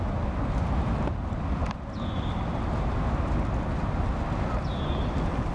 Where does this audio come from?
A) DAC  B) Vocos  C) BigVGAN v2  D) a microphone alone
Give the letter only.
D